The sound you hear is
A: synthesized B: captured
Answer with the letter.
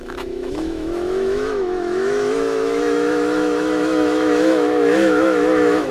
A